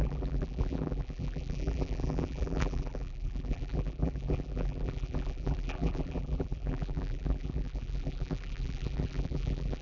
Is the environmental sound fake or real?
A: fake